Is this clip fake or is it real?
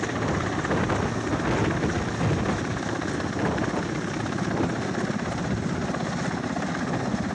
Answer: real